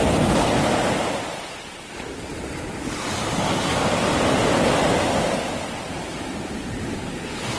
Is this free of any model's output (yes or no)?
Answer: yes